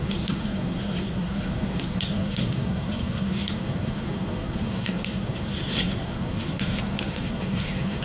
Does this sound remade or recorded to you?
remade